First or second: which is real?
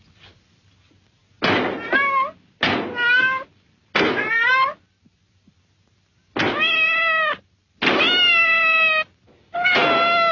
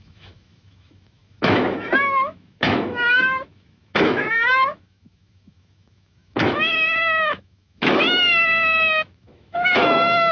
first